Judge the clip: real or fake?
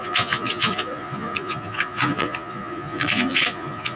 fake